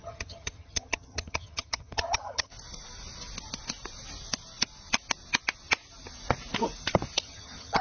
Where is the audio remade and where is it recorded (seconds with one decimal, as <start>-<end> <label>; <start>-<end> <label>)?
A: 0.0-2.5 remade; 2.5-7.2 recorded; 7.2-7.8 remade